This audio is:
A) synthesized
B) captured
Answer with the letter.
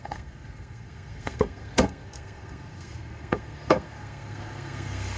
A